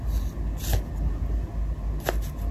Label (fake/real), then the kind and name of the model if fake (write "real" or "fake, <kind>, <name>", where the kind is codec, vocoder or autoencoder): real